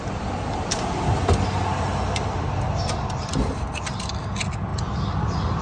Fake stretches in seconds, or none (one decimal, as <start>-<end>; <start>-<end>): 1.7-3.3; 4.7-5.6